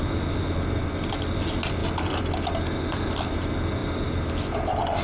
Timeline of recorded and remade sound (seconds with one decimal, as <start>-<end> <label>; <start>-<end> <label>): 0.0-5.0 recorded